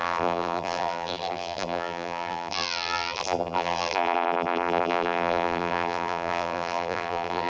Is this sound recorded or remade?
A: remade